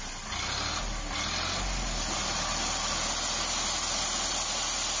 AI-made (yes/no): no